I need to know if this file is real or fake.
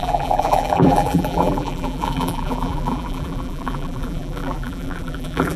fake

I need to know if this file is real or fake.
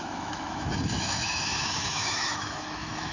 fake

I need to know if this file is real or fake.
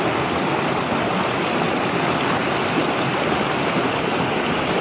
real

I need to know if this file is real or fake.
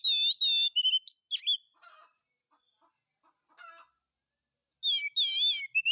real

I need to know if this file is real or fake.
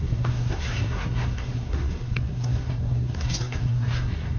fake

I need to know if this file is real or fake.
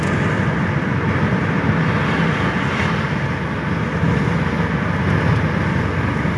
real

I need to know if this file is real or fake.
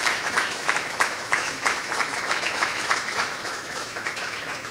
fake